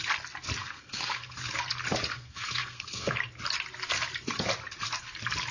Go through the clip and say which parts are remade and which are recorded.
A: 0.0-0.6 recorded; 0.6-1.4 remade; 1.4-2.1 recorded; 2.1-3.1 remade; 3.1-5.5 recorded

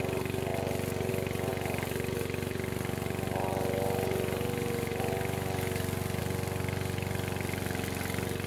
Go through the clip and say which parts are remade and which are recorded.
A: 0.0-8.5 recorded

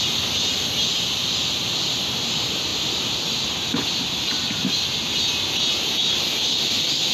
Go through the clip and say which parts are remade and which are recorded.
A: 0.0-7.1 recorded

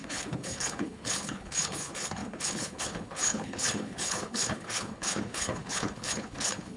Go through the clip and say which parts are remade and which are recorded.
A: 0.0-6.8 remade

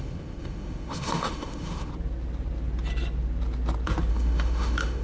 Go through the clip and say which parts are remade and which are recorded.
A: 0.0-1.9 remade; 1.9-4.1 recorded; 4.1-5.0 remade